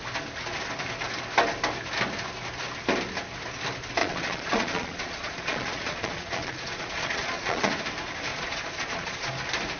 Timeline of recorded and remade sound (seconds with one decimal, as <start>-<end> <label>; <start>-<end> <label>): 0.0-4.0 recorded; 4.0-7.7 remade; 7.7-8.3 recorded; 8.3-9.3 remade; 9.3-9.8 recorded